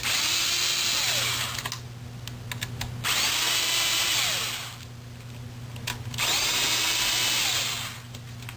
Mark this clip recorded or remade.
recorded